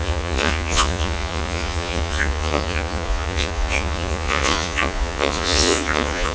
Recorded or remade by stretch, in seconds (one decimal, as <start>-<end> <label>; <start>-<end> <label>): 0.0-6.3 remade

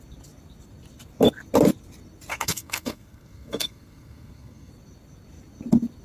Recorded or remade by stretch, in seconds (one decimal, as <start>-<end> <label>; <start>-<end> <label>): 0.0-2.3 recorded; 2.3-4.7 remade; 4.7-6.0 recorded